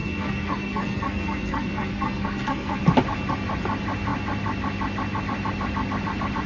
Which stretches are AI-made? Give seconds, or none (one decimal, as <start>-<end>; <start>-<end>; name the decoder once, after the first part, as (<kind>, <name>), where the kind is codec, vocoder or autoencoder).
0.0-2.8 (codec, SNAC)